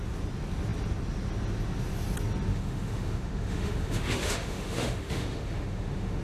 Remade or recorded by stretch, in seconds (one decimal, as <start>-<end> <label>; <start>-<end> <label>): 0.0-2.5 recorded; 2.5-6.2 remade